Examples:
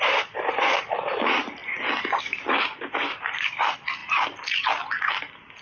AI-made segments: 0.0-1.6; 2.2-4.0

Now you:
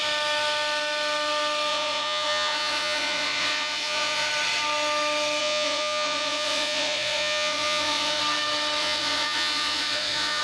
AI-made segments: 1.7-4.3; 5.4-8.2; 8.8-10.4

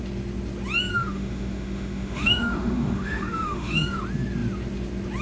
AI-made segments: 0.9-4.0

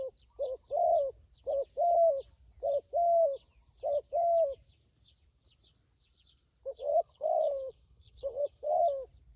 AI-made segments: 6.9-8.8

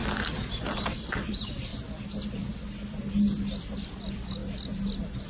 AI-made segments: none

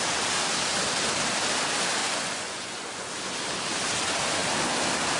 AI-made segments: 2.0-3.1